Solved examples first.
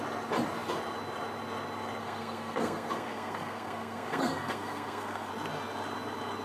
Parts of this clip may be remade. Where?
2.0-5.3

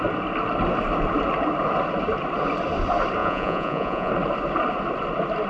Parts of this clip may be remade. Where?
3.2-4.1

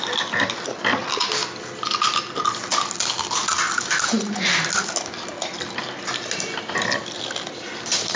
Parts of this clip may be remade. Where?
none

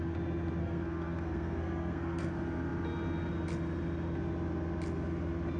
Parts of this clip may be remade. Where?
0.6-2.3

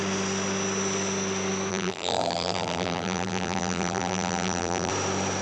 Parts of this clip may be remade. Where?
1.7-4.9